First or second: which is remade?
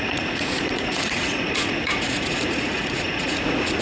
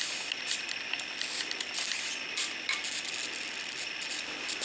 first